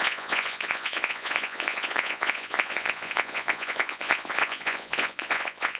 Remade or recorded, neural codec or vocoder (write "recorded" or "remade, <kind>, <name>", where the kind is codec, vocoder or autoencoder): remade, vocoder, Vocos